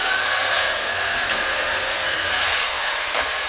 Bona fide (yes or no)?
no